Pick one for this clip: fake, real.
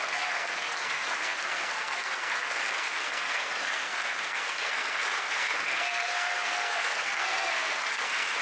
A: fake